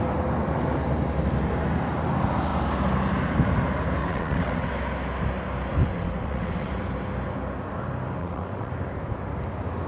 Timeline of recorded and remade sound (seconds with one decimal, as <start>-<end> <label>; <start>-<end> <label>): 0.0-4.0 recorded; 4.0-4.7 remade; 4.7-5.8 recorded; 5.8-6.7 remade; 6.7-8.2 recorded; 8.2-8.7 remade; 8.7-9.9 recorded